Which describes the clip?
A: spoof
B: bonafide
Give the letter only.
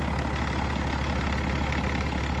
B